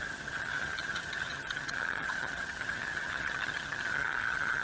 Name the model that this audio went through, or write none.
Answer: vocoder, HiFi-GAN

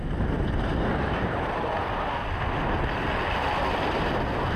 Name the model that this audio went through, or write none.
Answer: none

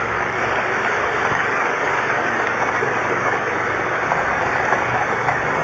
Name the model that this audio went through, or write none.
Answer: codec, DAC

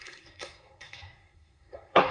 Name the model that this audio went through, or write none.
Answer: codec, SNAC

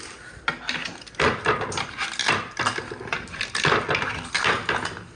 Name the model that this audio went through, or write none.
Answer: none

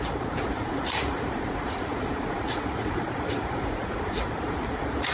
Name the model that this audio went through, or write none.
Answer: vocoder, Vocos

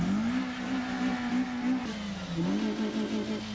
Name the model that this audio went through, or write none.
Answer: none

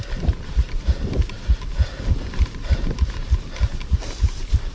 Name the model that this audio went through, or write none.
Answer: none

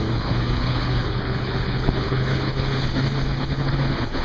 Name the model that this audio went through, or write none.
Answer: codec, HILCodec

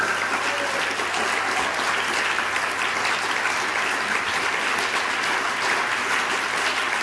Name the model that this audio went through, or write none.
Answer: none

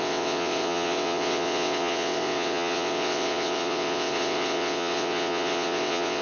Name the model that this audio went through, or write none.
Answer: vocoder, WaveNeXt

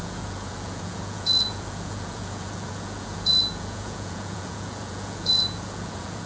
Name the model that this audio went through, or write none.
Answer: vocoder, Vocos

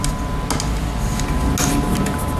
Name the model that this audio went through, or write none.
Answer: none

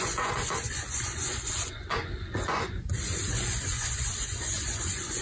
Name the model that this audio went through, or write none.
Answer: vocoder, Vocos